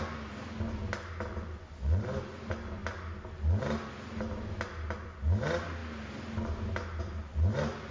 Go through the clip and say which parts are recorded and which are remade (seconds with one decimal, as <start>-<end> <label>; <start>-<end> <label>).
0.0-7.9 recorded